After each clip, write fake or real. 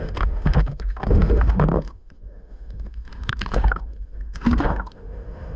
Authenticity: fake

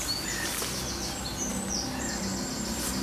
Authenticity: real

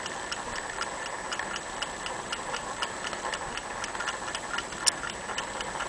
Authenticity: real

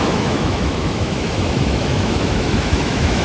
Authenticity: fake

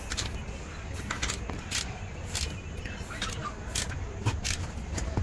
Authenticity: real